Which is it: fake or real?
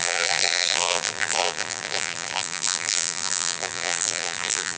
fake